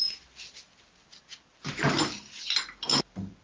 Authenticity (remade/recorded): recorded